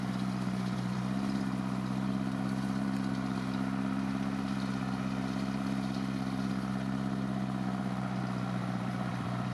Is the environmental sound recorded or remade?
remade